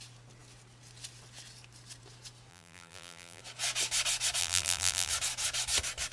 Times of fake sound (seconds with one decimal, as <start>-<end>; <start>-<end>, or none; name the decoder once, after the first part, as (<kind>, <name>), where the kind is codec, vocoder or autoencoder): 2.5-3.4 (vocoder, BigVGAN v2); 4.4-5.1